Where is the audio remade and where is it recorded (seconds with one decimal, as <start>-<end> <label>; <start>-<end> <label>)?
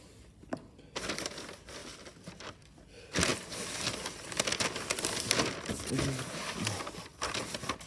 0.0-1.8 recorded; 1.8-2.8 remade; 2.8-7.1 recorded; 7.1-7.9 remade